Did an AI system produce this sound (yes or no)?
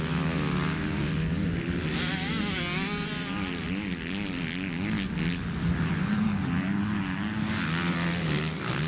no